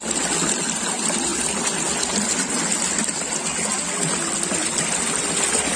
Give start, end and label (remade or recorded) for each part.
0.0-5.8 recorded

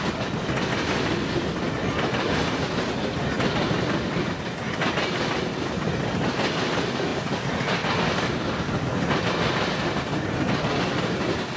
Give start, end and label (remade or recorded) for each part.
0.0-11.6 recorded

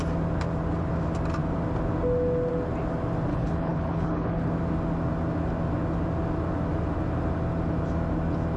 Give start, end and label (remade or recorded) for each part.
0.0-3.3 recorded; 3.3-4.5 remade; 4.5-8.6 recorded